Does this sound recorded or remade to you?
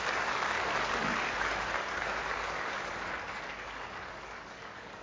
remade